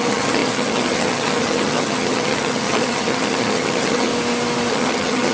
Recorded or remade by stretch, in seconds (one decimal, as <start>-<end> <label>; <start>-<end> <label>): 0.0-4.1 remade; 4.1-4.7 recorded; 4.7-5.3 remade